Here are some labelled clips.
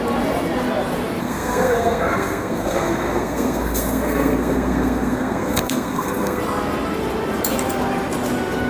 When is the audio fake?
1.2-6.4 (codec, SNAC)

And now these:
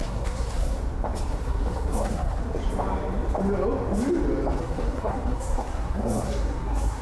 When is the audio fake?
0.0-0.8 (codec, SNAC); 1.3-2.4; 4.6-7.0